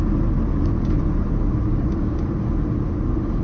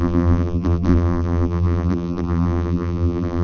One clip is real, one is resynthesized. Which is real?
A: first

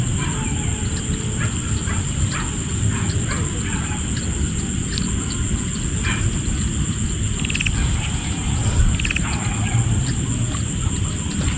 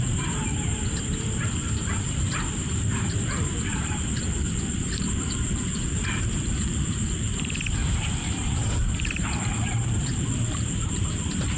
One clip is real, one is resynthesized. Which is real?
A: first